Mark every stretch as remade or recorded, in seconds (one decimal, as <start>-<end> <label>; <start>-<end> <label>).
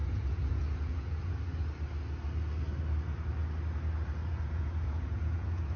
0.0-1.6 remade; 1.6-4.3 recorded; 4.3-5.8 remade